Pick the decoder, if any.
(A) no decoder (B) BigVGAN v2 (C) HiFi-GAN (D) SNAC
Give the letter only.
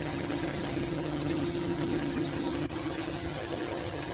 C